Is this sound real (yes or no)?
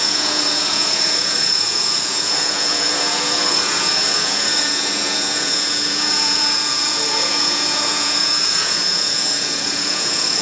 no